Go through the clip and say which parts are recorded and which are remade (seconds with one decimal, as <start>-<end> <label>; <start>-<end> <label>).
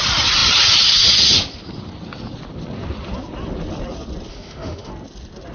0.0-4.3 recorded; 4.3-4.9 remade; 4.9-5.5 recorded